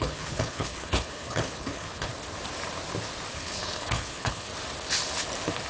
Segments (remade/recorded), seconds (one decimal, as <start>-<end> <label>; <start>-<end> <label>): 0.0-2.1 remade; 2.1-3.3 recorded; 3.3-4.5 remade; 4.5-5.7 recorded